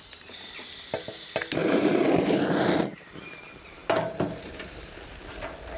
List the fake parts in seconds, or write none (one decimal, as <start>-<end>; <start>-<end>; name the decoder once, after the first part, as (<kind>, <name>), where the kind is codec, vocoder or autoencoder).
1.6-2.4 (vocoder, BigVGAN v2); 3.8-5.2